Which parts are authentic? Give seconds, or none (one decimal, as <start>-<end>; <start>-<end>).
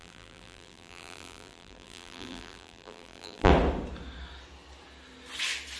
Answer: 3.5-5.8